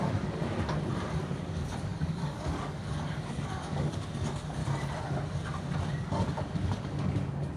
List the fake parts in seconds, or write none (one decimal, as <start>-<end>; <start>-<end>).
0.0-0.4; 1.2-4.6; 5.9-7.6